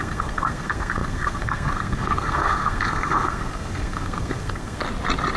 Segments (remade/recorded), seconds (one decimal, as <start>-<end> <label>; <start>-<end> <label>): 0.0-4.8 remade; 4.8-5.4 recorded